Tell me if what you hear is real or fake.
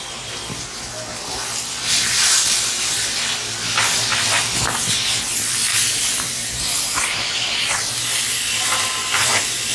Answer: real